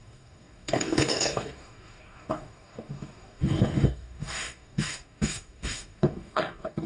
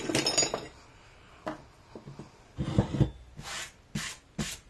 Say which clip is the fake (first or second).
first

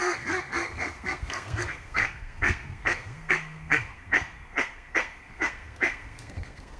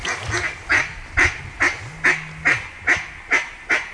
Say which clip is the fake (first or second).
first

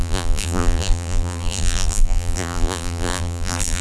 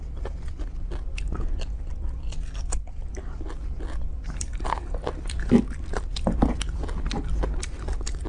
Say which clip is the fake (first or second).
first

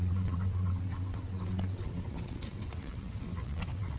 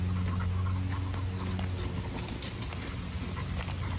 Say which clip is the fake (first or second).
first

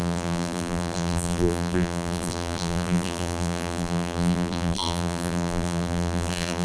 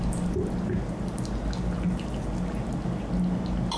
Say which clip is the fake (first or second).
first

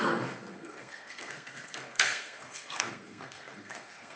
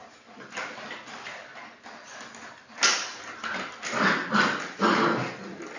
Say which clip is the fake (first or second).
first